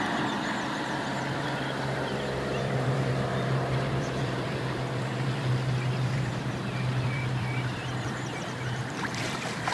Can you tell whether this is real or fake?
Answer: fake